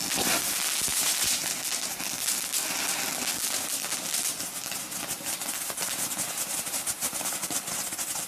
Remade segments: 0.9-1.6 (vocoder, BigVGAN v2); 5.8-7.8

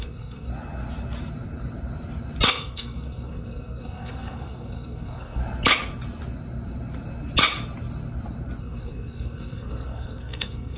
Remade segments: 0.0-0.5 (codec, SNAC); 2.5-5.4; 8.6-10.8

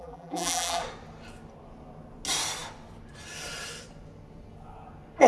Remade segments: 0.0-0.8 (vocoder, BigVGAN v2)

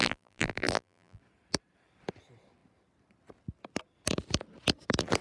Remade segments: 0.0-1.2 (vocoder, BigVGAN v2)

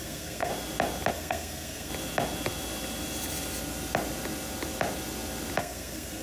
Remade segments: 0.0-0.5 (codec, SNAC); 1.1-1.9; 5.6-6.2